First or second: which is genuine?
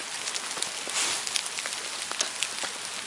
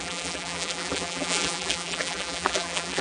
first